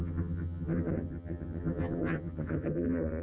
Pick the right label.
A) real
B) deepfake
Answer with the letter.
B